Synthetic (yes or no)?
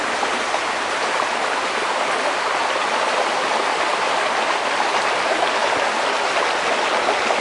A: no